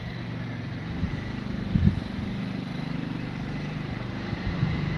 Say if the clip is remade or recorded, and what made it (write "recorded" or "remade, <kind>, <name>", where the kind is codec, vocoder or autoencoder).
remade, vocoder, BigVGAN v2